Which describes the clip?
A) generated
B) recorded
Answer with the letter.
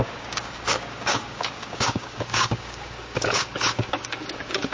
A